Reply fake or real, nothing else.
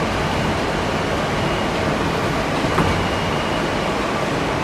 real